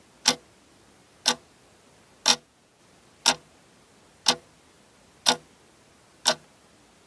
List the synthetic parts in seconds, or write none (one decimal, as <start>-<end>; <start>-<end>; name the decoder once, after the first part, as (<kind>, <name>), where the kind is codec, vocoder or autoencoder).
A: 2.3-2.8 (vocoder, Vocos)